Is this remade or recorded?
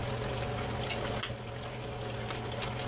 recorded